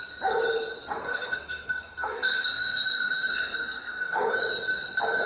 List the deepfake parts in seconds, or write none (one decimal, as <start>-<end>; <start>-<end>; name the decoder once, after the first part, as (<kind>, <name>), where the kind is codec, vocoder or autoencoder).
1.1-4.3 (codec, SNAC)